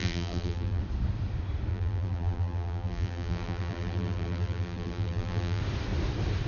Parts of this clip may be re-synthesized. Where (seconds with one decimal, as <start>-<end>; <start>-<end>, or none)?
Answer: 0.0-0.8; 1.7-5.6